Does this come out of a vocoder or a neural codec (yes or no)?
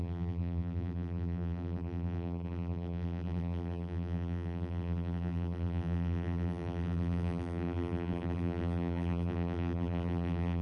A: yes